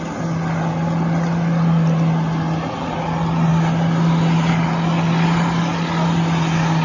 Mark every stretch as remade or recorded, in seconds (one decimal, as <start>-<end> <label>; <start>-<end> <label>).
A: 0.0-6.8 recorded